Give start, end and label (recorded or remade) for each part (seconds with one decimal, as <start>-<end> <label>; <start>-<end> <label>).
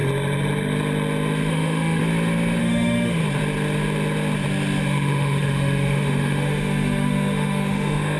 0.0-1.5 recorded; 1.5-2.0 remade; 2.0-2.6 recorded; 2.6-3.2 remade; 3.2-4.8 recorded; 4.8-8.2 remade